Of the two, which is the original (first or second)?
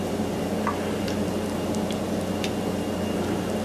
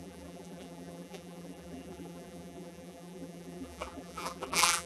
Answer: first